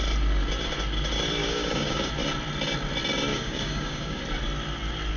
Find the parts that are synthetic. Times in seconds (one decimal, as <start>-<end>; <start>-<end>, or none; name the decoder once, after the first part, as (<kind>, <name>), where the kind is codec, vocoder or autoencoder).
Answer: 1.4-2.1 (codec, DAC); 3.3-4.2